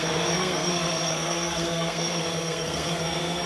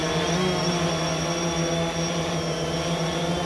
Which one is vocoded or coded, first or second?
first